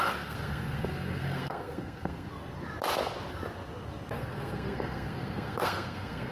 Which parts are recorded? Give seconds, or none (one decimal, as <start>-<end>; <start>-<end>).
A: 2.3-4.2

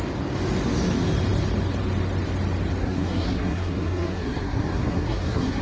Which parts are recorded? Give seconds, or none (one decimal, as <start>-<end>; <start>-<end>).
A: 0.0-2.8

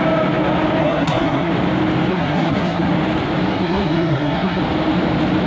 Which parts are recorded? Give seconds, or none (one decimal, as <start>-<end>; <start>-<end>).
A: 0.0-0.8; 1.5-2.1; 2.9-3.5; 4.6-5.5

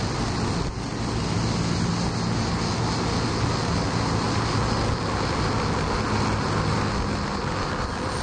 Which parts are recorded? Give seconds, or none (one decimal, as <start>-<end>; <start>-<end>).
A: 0.0-8.2

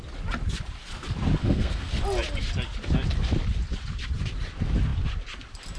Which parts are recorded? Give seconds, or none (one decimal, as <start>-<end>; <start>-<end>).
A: 0.0-1.4; 1.9-5.8

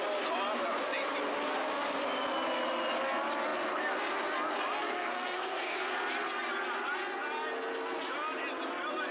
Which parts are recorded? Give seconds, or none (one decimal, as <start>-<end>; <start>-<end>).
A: 0.0-4.8; 5.8-9.1

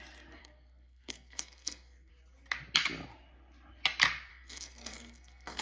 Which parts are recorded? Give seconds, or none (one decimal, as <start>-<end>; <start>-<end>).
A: 0.0-0.4; 2.1-4.3